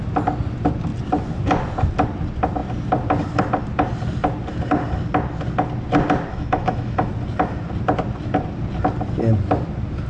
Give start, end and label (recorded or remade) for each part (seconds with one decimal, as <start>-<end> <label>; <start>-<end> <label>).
0.0-6.3 recorded; 6.3-7.1 remade; 7.1-10.1 recorded